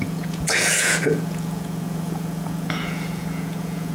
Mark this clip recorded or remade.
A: remade